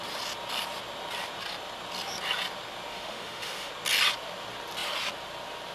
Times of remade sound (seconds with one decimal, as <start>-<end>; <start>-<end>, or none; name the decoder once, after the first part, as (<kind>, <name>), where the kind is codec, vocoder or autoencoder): 2.9-3.7 (autoencoder, DAC-VAE)